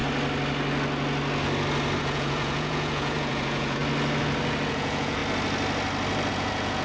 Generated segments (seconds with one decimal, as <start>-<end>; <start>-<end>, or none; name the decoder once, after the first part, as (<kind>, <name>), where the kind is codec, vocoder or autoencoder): 2.0-3.8 (vocoder, Vocos); 4.7-5.2; 6.3-6.8